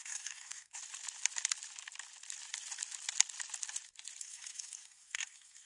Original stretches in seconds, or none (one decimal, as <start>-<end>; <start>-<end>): 0.8-4.2